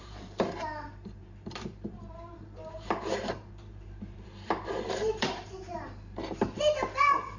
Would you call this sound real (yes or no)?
no